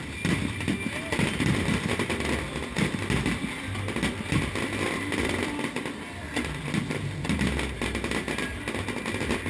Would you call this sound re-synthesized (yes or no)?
no